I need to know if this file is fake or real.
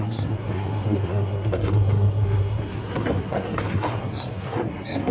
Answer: fake